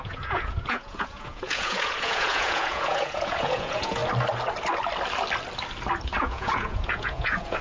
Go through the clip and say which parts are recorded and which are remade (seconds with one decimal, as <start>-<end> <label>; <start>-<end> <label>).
0.0-4.0 remade; 4.0-6.2 recorded; 6.2-7.6 remade